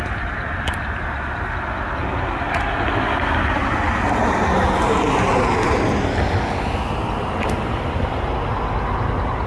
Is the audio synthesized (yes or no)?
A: no